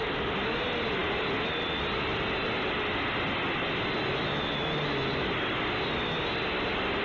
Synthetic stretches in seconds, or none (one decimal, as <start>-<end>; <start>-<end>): none